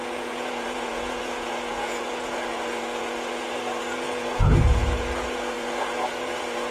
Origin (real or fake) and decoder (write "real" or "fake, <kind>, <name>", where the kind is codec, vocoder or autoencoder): fake, vocoder, Vocos